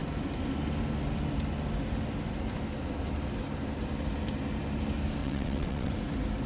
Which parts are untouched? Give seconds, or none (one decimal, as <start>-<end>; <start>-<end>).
0.0-5.2; 5.9-6.5